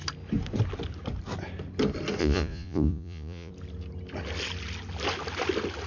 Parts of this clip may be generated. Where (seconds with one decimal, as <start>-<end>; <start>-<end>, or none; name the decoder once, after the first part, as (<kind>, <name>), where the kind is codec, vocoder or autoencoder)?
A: 2.2-3.5 (vocoder, Vocos)